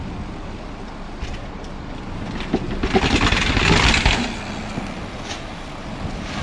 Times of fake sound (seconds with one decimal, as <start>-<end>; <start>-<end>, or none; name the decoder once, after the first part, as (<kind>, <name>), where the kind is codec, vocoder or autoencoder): none